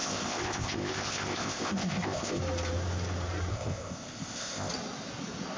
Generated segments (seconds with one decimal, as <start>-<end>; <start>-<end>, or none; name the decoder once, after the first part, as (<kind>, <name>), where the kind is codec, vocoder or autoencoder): 0.0-2.4 (codec, ZipCodec); 3.5-4.7